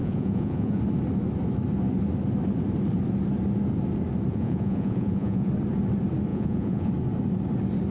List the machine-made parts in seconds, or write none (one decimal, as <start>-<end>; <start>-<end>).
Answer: 0.0-0.8; 4.3-5.5; 6.3-6.9